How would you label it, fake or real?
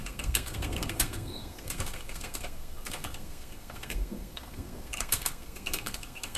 fake